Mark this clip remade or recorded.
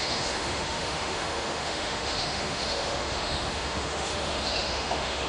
remade